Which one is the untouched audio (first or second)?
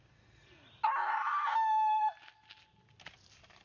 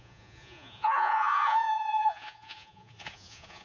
first